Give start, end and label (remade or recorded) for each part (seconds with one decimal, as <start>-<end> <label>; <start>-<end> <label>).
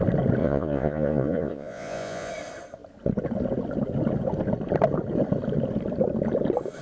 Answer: 0.0-0.4 recorded; 0.4-2.3 remade; 2.3-6.8 recorded